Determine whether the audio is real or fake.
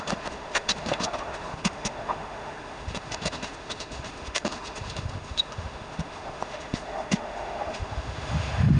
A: fake